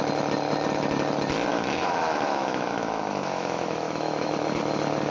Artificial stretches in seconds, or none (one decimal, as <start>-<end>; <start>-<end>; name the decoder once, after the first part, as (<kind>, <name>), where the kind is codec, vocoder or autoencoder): 1.5-4.3 (autoencoder, DAC-VAE)